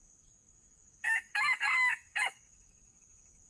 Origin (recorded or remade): remade